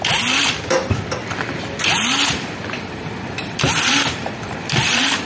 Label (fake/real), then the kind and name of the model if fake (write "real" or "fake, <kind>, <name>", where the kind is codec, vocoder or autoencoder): fake, vocoder, BigVGAN v2